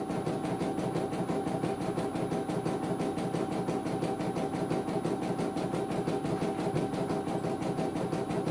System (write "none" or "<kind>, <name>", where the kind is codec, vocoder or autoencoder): none